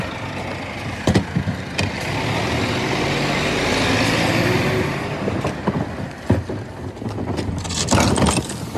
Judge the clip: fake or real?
real